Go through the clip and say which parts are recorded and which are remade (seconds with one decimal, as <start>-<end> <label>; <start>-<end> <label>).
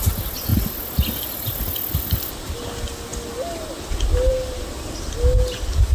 0.0-5.9 recorded